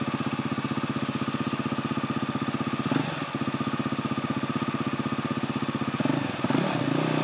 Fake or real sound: real